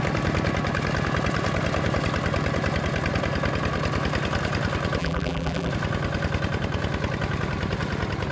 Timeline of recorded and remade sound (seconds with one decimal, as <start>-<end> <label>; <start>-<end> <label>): 0.0-5.0 recorded; 5.0-5.7 remade; 5.7-8.3 recorded